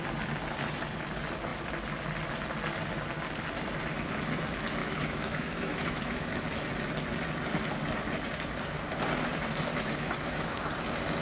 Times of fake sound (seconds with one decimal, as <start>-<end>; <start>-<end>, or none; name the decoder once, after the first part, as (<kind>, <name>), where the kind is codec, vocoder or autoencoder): 4.8-6.4 (autoencoder, DAC-VAE); 9.7-10.6